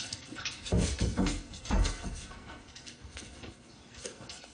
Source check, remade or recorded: remade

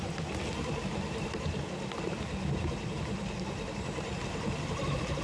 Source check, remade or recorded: recorded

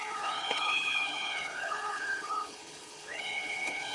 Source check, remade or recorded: remade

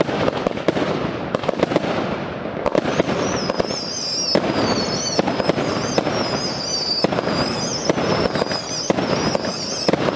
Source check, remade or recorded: recorded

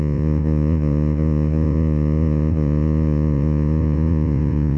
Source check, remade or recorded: remade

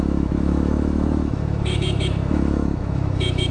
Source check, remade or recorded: remade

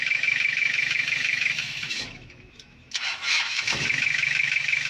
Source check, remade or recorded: remade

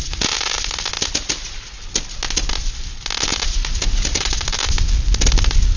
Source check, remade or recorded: recorded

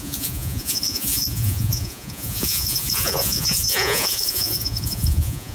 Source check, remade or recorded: remade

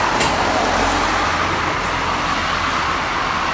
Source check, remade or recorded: recorded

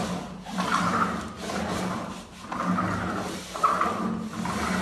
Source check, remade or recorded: recorded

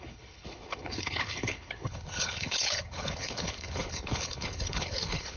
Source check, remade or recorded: remade